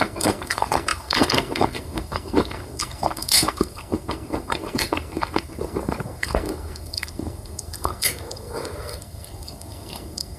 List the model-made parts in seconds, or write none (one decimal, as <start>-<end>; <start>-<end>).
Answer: 0.0-10.4